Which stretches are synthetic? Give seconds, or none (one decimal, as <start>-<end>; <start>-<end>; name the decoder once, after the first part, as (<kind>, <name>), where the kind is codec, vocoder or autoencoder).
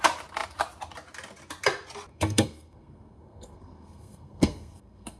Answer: 2.1-5.2 (codec, SNAC)